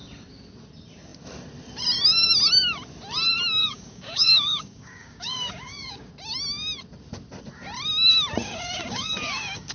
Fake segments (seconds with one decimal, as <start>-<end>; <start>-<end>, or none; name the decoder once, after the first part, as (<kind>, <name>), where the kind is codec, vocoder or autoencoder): 3.6-6.1 (codec, DAC); 8.4-9.7